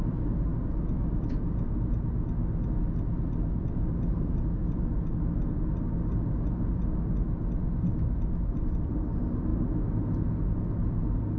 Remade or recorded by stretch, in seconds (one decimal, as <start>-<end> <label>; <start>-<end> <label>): 0.0-11.4 recorded